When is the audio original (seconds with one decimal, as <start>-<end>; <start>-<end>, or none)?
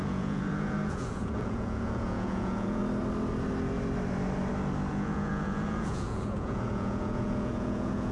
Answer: 2.8-4.9